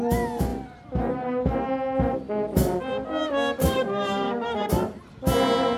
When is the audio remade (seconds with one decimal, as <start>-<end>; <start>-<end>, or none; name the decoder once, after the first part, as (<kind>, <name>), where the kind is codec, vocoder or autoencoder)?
3.6-4.7 (codec, SNAC)